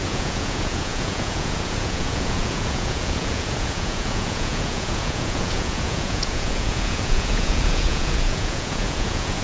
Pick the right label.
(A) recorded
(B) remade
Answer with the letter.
B